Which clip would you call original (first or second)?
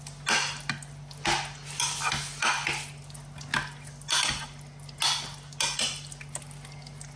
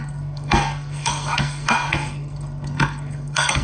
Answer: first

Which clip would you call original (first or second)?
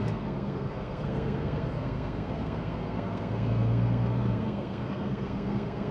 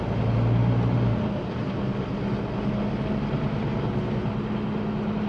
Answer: second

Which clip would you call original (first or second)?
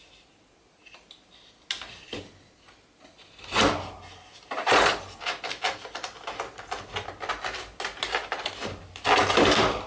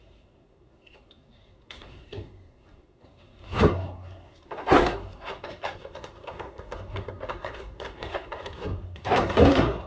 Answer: first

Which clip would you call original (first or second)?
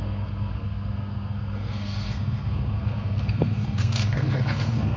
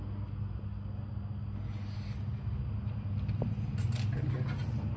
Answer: second